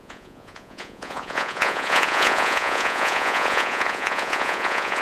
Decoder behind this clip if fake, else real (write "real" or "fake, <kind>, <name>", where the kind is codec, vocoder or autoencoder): fake, vocoder, Vocos